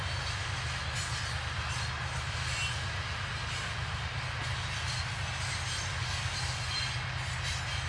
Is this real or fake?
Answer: real